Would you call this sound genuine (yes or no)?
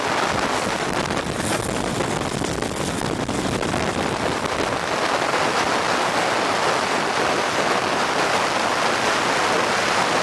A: yes